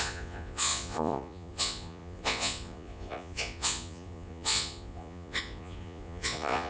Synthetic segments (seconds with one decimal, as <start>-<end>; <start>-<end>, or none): 0.0-6.7